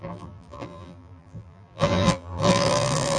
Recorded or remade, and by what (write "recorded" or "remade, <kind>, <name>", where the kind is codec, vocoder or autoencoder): remade, vocoder, BigVGAN v2